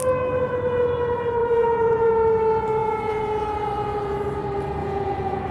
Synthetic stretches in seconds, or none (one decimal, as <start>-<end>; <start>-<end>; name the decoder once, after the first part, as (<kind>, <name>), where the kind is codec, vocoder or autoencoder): 1.4-2.1 (vocoder, Vocos); 2.8-4.3; 4.8-5.5